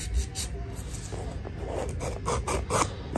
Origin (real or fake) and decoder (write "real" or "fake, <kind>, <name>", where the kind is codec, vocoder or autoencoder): real